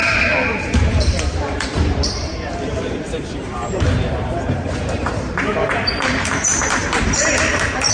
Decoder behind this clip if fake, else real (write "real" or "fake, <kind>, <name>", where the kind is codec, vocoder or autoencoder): fake, vocoder, BigVGAN v2